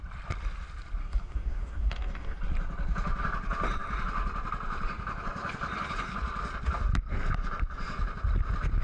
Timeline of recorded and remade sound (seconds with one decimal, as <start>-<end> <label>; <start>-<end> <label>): 0.0-1.0 recorded; 1.0-2.4 remade; 2.4-8.8 recorded